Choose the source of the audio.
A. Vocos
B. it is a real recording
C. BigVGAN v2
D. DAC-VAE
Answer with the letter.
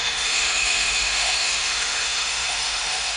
D